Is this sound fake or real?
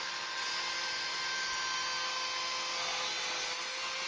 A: real